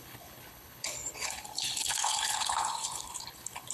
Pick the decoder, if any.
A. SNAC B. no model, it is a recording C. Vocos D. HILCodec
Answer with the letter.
D